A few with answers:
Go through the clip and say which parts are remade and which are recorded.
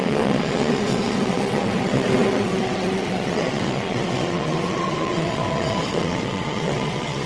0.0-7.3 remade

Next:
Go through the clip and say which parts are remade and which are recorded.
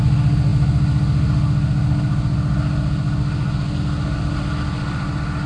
0.0-5.5 recorded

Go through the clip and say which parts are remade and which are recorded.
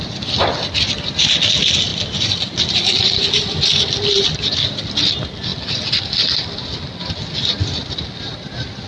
0.0-8.9 recorded